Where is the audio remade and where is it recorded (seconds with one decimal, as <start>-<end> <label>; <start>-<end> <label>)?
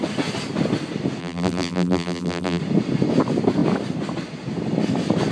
0.0-1.2 recorded; 1.2-2.6 remade; 2.6-5.3 recorded